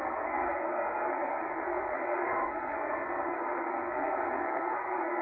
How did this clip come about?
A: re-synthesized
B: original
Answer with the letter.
A